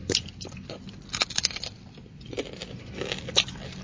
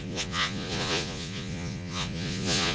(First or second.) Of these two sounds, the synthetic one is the second